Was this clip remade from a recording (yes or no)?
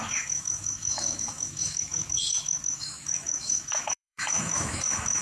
yes